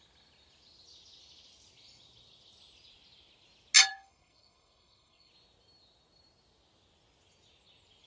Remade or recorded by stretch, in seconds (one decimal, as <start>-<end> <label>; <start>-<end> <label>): 0.0-3.9 recorded; 3.9-5.3 remade; 5.3-8.1 recorded